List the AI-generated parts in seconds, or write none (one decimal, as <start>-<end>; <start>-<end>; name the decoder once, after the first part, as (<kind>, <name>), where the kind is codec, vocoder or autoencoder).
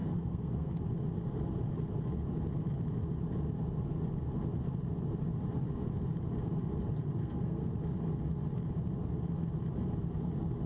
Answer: 0.0-0.7 (codec, SNAC); 7.2-7.7